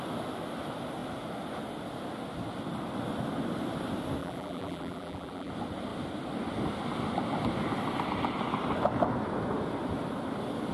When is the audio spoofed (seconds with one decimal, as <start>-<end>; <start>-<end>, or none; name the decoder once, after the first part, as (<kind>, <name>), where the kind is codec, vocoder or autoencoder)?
4.2-5.5 (vocoder, BigVGAN v2)